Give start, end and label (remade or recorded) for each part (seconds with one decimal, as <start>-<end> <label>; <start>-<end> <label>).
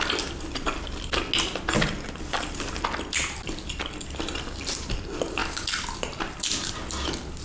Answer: 0.0-7.4 recorded